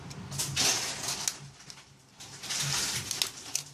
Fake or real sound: real